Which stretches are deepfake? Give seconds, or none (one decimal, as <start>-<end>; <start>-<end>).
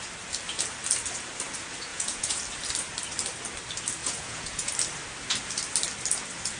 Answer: 1.9-2.4; 4.0-4.7